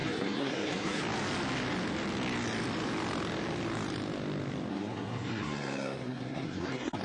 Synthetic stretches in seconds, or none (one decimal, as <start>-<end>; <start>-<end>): 0.0-1.0; 4.7-7.0